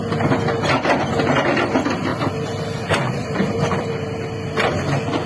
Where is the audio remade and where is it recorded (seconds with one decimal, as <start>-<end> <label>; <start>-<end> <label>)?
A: 0.0-2.1 recorded; 2.1-3.9 remade; 3.9-5.3 recorded